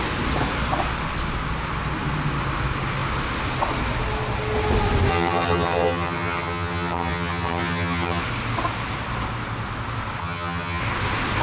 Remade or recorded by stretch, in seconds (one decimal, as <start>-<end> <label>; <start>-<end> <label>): 0.0-5.1 recorded; 5.1-8.2 remade; 8.2-10.2 recorded; 10.2-10.8 remade; 10.8-11.4 recorded